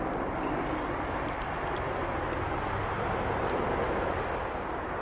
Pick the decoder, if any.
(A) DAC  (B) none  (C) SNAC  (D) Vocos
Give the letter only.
B